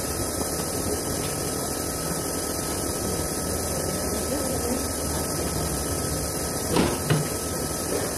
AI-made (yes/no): no